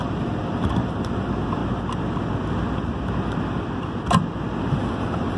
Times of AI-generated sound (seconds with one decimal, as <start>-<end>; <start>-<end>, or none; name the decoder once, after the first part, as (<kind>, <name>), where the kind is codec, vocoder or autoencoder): 0.0-1.6 (vocoder, BigVGAN v2); 4.8-5.4